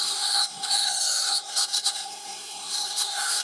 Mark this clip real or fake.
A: fake